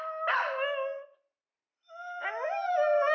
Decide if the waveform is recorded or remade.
recorded